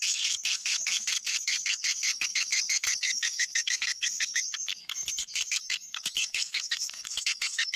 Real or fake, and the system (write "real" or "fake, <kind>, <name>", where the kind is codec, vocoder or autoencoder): fake, codec, SNAC